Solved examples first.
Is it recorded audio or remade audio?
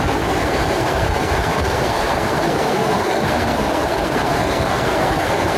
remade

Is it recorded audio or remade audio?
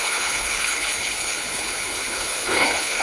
remade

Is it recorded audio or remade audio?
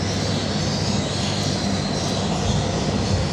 recorded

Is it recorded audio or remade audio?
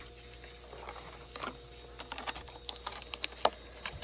recorded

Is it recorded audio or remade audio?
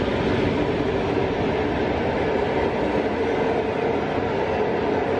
recorded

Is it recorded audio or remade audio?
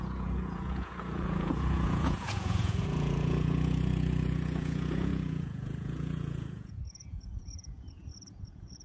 remade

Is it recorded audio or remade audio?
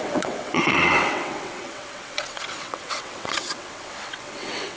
remade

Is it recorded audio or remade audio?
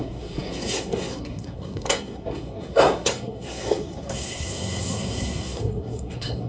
remade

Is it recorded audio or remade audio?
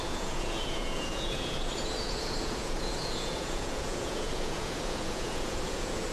remade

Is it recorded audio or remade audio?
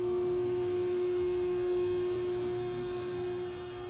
remade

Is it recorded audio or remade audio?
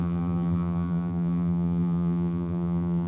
remade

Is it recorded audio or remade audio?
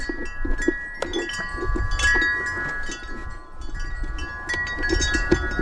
recorded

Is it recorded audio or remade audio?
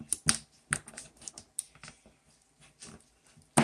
recorded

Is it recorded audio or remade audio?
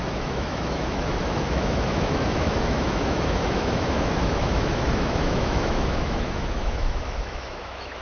remade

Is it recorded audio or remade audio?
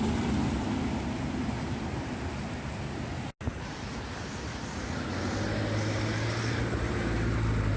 recorded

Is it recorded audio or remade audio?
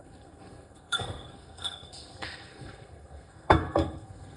remade